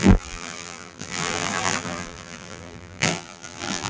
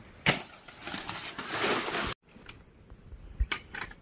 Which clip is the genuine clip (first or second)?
second